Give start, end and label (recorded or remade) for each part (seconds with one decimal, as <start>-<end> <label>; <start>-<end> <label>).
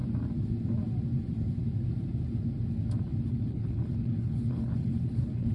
0.0-3.3 recorded; 3.3-5.5 remade